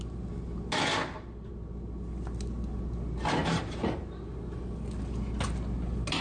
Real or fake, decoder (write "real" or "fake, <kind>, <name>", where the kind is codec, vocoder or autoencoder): real